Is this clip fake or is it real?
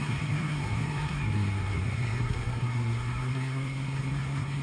fake